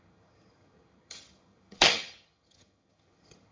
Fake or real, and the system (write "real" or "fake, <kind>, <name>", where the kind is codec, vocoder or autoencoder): fake, vocoder, HiFi-GAN